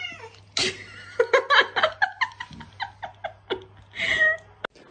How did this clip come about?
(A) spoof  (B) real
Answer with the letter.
B